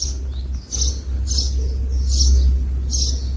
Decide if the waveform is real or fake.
real